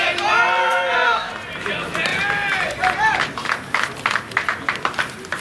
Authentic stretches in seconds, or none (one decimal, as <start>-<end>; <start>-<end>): 0.0-0.6; 1.3-5.4